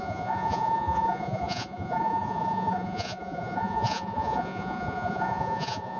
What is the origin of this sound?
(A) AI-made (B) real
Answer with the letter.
A